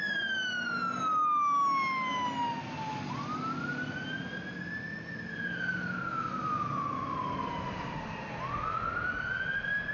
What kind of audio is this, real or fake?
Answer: real